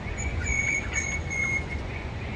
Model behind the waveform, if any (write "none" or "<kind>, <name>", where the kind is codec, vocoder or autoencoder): vocoder, Vocos